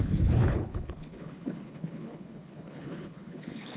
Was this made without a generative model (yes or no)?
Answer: no